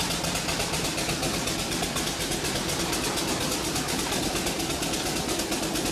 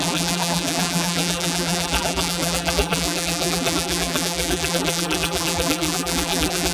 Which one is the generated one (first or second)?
second